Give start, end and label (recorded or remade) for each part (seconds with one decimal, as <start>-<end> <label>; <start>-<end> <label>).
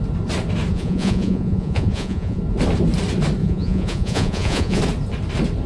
0.0-0.7 recorded; 0.7-2.4 remade; 2.4-3.4 recorded; 3.4-4.8 remade; 4.8-5.7 recorded